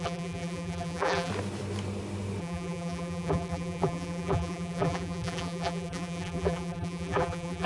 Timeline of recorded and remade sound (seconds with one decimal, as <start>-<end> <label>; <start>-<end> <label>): 0.0-1.3 remade; 1.3-2.4 recorded; 2.4-7.7 remade